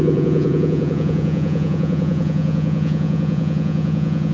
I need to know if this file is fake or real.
fake